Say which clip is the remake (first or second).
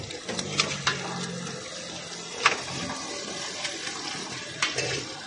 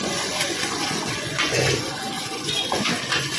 second